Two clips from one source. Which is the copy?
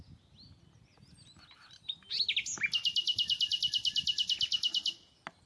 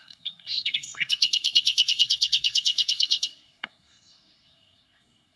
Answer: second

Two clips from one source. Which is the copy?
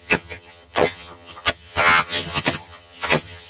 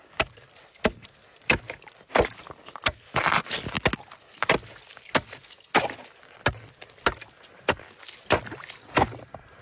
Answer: first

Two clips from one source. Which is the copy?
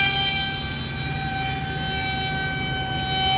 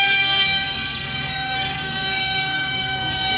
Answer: second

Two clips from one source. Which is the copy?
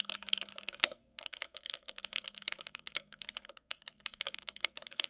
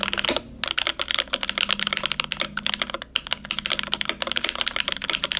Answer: first